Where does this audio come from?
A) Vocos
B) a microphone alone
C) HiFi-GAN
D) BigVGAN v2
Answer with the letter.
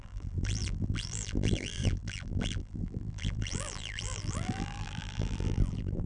D